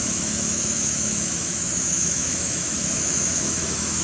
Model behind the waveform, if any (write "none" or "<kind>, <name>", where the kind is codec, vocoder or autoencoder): autoencoder, DAC-VAE